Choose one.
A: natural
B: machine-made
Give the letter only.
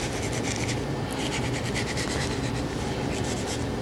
A